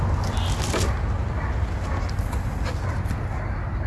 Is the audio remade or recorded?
recorded